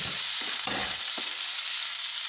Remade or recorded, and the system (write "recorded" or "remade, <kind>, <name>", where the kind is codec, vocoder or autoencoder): recorded